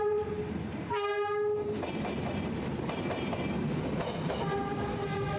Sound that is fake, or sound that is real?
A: real